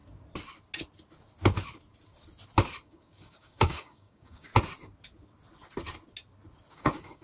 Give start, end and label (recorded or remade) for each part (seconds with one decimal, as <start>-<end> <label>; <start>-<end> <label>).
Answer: 0.0-2.8 recorded; 2.8-4.5 remade; 4.5-6.7 recorded; 6.7-7.2 remade